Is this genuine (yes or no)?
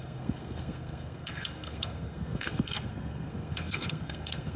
no